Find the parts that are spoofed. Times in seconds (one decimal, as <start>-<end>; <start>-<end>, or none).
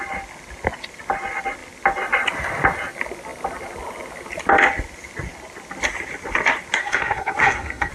6.8-7.9